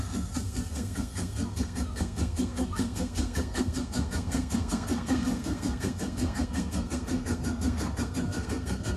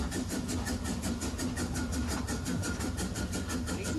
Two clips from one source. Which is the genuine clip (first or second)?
second